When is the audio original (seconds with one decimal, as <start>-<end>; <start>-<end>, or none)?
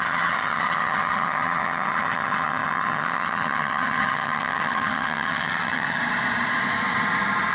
6.0-7.5